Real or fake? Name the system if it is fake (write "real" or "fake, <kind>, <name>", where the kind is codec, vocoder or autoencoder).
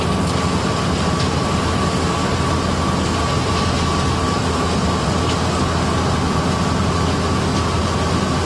real